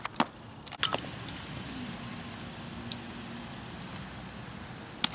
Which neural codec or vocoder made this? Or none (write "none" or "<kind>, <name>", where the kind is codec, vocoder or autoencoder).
none